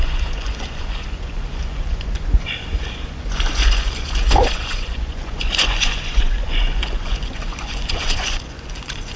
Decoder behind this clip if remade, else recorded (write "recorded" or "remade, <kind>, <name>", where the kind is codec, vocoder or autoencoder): remade, vocoder, Vocos